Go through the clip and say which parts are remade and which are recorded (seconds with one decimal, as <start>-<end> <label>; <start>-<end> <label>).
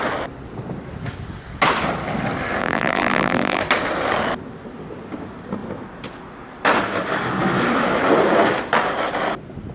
0.0-2.6 recorded; 2.6-3.6 remade; 3.6-9.7 recorded